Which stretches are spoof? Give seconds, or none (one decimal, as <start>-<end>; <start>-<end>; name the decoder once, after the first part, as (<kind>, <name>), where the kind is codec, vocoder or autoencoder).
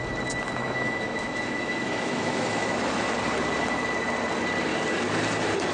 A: 0.6-3.0 (autoencoder, DAC-VAE)